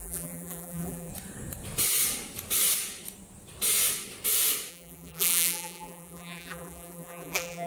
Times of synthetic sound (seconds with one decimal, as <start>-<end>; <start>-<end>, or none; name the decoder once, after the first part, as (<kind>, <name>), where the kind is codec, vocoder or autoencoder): 0.0-1.1 (vocoder, BigVGAN v2); 4.7-7.7